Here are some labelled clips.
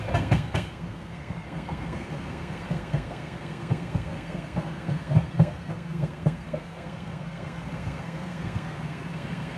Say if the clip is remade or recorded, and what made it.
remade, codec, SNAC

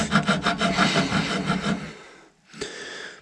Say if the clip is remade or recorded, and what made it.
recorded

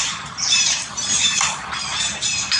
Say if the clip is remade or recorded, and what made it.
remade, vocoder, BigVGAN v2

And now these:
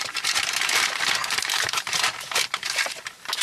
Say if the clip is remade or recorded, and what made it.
remade, vocoder, BigVGAN v2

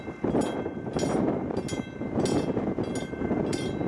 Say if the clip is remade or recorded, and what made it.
recorded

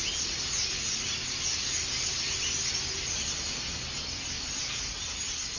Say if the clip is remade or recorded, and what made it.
recorded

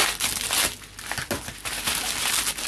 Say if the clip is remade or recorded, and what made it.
recorded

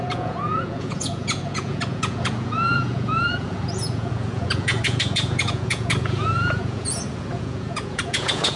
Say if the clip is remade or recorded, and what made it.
remade, vocoder, Vocos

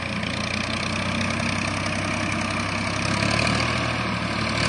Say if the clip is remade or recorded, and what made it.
recorded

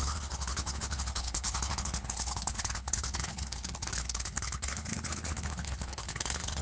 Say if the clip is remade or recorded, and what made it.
remade, codec, HILCodec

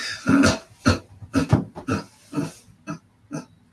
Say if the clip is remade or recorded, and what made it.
recorded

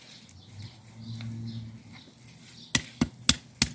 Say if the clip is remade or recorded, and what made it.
recorded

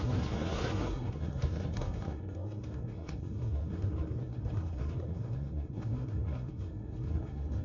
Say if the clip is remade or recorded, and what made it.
remade, codec, SNAC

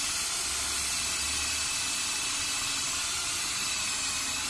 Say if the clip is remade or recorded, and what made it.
recorded